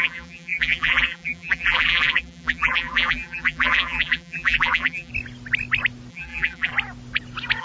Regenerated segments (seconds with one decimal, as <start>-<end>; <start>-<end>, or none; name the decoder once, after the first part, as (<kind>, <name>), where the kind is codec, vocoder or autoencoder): 0.0-5.1 (vocoder, BigVGAN v2); 6.1-6.7